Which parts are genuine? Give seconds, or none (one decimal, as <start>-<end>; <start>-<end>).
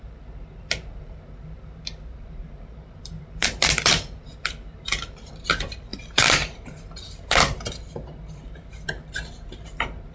none